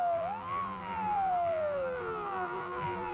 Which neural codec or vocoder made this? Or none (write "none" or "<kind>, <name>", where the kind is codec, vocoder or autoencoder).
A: vocoder, BigVGAN v2